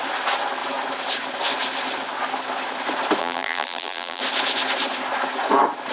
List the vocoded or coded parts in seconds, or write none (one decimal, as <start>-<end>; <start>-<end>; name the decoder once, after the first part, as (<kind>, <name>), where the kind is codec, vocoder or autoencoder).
3.2-4.2 (vocoder, BigVGAN v2)